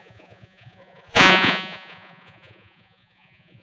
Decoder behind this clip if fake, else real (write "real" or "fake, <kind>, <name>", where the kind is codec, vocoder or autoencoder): fake, vocoder, Vocos